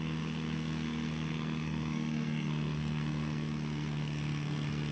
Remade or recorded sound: remade